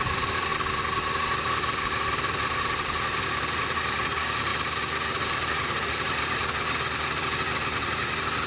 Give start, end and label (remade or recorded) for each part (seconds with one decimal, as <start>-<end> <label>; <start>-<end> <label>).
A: 0.0-0.5 remade; 0.5-1.4 recorded; 1.4-4.5 remade; 4.5-5.2 recorded; 5.2-6.4 remade; 6.4-8.5 recorded